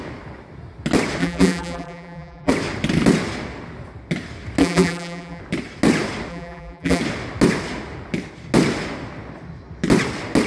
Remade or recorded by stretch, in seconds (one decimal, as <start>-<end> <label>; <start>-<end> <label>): 0.0-1.2 recorded; 1.2-2.5 remade; 2.5-4.6 recorded; 4.6-5.4 remade; 5.4-6.3 recorded; 6.3-7.0 remade; 7.0-10.5 recorded